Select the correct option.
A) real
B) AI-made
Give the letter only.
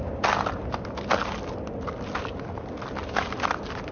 A